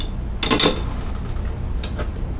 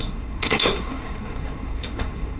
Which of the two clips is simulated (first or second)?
second